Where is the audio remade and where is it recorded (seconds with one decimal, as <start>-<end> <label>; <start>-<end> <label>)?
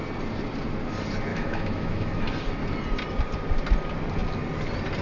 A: 0.0-1.3 recorded; 1.3-2.2 remade; 2.2-5.0 recorded